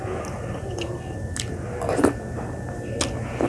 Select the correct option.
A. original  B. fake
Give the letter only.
A